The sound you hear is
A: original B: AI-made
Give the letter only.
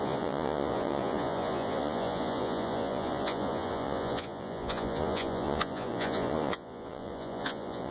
B